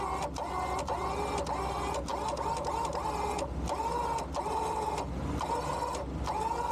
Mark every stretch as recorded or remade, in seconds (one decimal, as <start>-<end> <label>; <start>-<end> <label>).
0.0-6.7 recorded